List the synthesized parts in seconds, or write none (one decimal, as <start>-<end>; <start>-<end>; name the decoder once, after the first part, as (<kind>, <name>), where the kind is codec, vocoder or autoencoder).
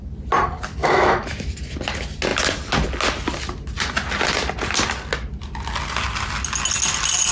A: 0.8-1.5 (autoencoder, DAC-VAE)